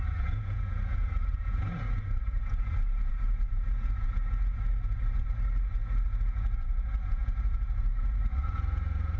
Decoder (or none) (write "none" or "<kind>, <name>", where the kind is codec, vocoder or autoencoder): vocoder, Vocos